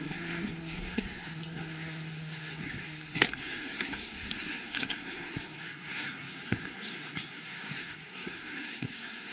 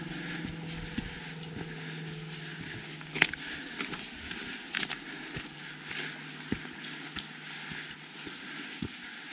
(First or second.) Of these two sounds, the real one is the second